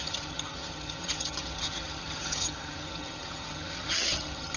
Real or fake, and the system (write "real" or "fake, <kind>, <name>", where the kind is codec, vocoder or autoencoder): fake, vocoder, HiFi-GAN